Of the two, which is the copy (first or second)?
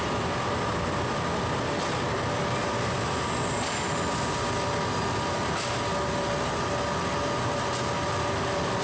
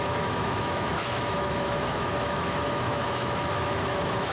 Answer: second